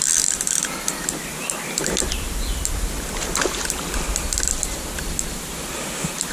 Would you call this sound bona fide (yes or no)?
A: yes